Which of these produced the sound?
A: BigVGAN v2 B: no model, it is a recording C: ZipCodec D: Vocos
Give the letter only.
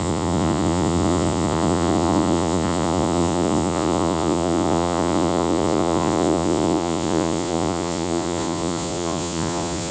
D